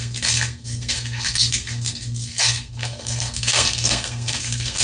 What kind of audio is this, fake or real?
fake